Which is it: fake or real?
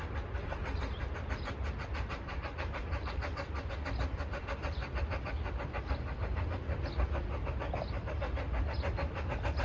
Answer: real